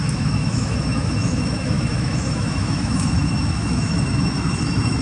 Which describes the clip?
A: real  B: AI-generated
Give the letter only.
B